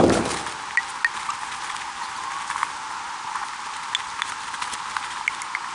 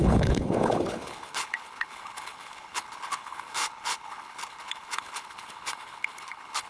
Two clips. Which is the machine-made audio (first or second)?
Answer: second